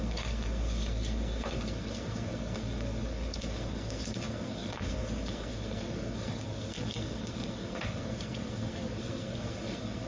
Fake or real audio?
fake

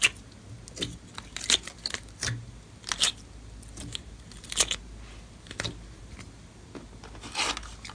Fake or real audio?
real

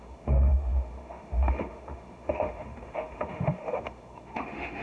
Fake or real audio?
fake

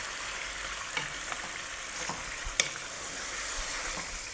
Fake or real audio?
real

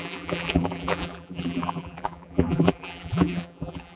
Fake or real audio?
fake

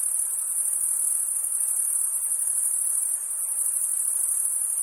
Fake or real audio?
real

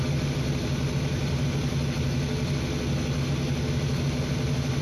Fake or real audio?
real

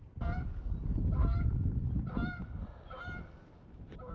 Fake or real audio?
real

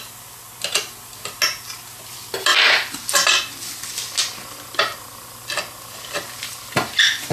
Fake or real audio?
real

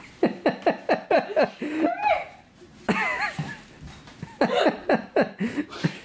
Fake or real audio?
fake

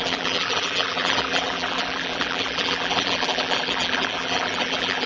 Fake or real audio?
fake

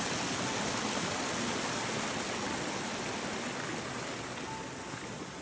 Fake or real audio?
real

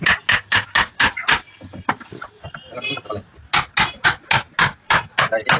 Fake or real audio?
real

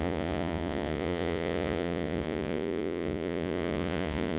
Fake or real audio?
fake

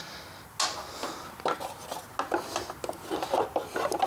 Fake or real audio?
real